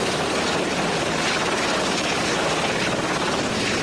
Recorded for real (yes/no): yes